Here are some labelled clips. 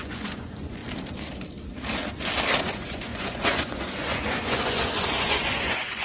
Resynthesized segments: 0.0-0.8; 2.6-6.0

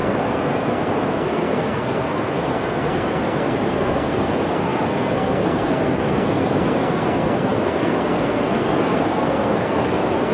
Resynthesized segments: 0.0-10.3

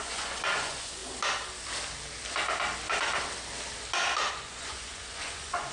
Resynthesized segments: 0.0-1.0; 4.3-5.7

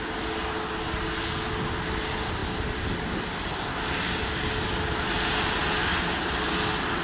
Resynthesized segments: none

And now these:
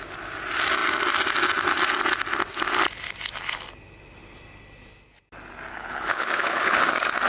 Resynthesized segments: 5.7-6.8

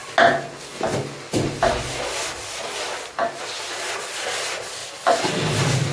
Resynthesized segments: none